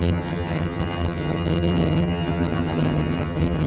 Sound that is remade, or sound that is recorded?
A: remade